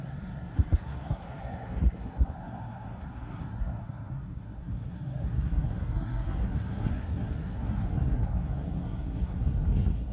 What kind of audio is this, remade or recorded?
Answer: remade